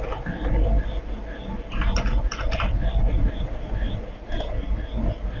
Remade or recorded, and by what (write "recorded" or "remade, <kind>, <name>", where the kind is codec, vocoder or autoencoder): recorded